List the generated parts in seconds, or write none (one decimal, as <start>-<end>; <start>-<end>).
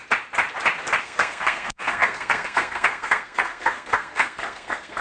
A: 1.0-5.0